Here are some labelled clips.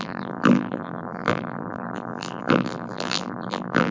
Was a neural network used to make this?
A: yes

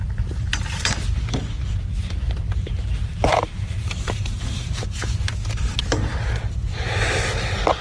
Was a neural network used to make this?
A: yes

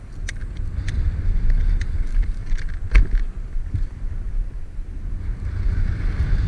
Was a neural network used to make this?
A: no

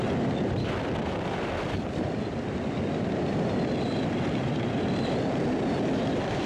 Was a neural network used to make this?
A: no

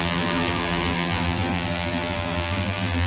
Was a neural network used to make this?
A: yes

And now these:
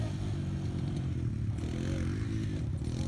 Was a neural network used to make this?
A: no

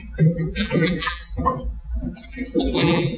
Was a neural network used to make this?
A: yes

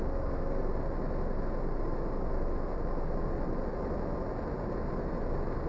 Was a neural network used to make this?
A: no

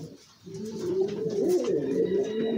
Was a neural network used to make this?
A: yes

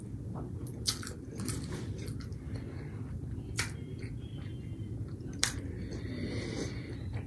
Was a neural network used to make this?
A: yes